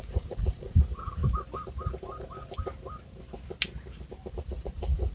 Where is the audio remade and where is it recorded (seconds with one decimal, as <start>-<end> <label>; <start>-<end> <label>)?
0.0-1.2 remade; 1.2-4.3 recorded; 4.3-5.1 remade